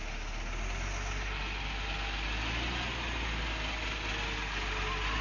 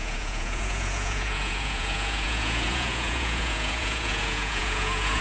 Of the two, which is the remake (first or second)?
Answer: second